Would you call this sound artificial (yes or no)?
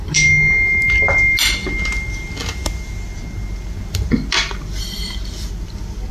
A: no